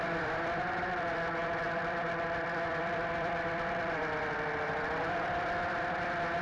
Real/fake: fake